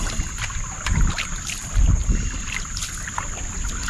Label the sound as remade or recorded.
recorded